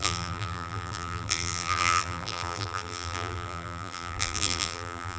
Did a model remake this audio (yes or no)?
yes